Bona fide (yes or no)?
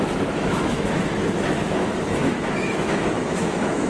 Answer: no